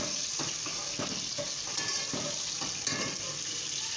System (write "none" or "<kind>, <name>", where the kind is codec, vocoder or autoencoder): none